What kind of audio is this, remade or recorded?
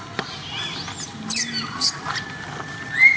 recorded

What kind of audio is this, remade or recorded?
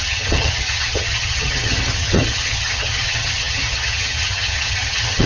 remade